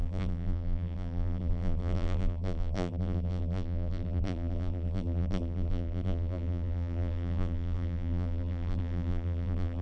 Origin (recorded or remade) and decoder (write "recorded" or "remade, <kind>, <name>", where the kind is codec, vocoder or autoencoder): remade, vocoder, BigVGAN v2